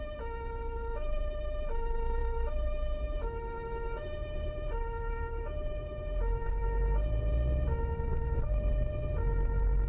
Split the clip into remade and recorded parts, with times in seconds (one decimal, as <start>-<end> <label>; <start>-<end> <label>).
0.0-0.6 recorded; 0.6-1.2 remade; 1.2-2.2 recorded; 2.2-7.3 remade; 7.3-8.1 recorded; 8.1-8.7 remade; 8.7-9.9 recorded